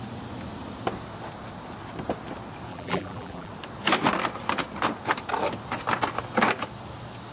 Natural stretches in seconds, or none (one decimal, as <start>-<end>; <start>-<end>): 0.0-2.7; 3.5-7.3